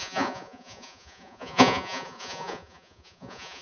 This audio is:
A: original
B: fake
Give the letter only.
B